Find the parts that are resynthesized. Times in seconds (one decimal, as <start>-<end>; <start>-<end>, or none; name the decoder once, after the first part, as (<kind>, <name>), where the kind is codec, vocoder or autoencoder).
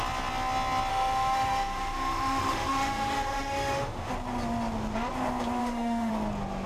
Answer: 0.9-4.1 (autoencoder, DAC-VAE); 5.6-6.1